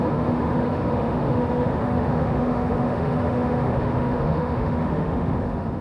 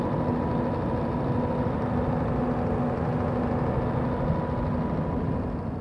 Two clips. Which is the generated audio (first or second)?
first